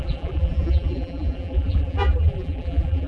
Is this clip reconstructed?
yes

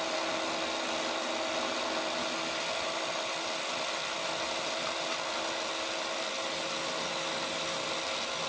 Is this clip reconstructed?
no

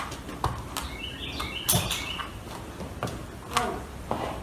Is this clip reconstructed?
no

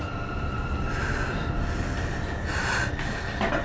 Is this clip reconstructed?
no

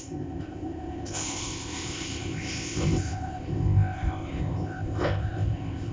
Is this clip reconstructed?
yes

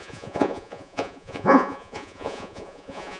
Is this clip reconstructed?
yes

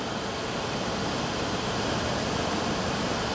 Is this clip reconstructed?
no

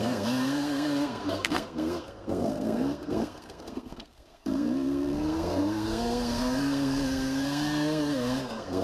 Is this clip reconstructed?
yes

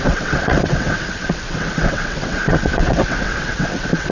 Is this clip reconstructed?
yes